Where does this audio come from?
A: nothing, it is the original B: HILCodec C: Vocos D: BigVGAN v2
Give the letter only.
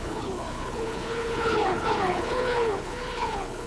B